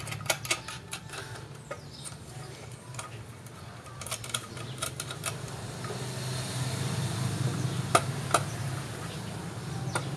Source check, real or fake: real